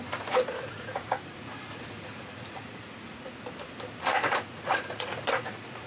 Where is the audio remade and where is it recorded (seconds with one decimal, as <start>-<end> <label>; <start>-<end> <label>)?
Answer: 0.0-3.3 remade; 3.3-4.0 recorded; 4.0-5.9 remade